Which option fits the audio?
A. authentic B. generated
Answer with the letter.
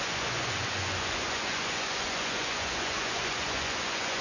B